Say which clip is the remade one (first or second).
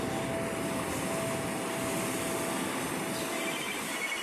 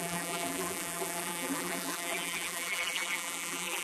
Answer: second